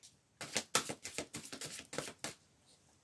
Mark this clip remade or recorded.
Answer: recorded